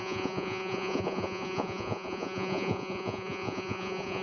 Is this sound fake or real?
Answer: fake